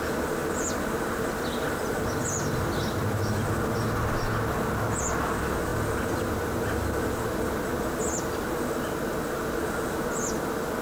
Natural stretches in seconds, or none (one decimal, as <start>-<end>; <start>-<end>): 0.0-10.8